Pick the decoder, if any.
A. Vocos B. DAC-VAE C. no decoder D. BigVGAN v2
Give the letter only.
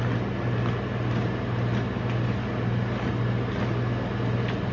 C